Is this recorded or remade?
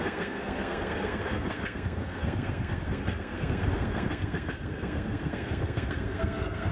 remade